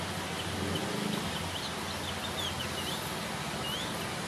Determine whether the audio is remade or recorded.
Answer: recorded